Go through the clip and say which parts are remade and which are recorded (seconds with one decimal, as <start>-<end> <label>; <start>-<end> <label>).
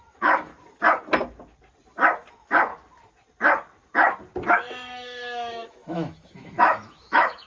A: 0.0-0.5 remade; 0.5-2.3 recorded; 2.3-2.7 remade; 2.7-4.5 recorded; 4.5-7.5 remade